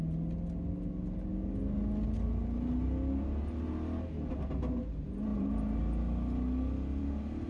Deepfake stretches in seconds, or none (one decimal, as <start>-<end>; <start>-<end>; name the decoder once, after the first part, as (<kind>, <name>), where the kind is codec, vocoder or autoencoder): none

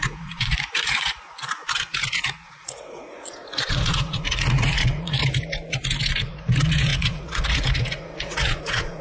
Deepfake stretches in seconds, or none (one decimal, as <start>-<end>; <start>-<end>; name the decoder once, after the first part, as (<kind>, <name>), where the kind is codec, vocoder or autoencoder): 0.0-1.6 (vocoder, Vocos); 2.1-5.2; 6.1-9.0

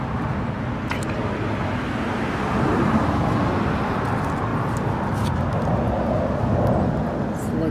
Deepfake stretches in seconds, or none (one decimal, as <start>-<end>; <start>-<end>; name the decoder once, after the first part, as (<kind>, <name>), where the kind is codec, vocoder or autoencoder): none

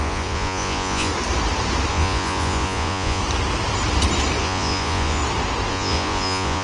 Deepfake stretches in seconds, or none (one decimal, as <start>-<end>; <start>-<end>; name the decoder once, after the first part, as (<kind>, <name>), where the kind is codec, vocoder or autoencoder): 0.0-1.1 (vocoder, Vocos); 1.9-3.2; 4.4-5.2; 5.7-6.6

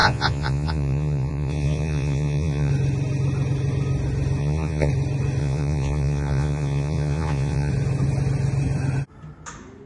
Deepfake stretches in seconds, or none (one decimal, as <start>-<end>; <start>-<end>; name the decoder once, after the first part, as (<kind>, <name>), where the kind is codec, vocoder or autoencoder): 0.0-2.7 (vocoder, Vocos); 4.4-4.9; 5.4-7.7

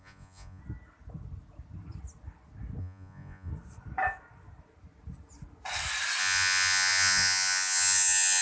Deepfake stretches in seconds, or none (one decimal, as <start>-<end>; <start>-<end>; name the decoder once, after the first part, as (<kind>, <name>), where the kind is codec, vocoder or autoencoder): 0.0-0.6 (vocoder, Vocos); 2.8-3.5; 6.2-8.4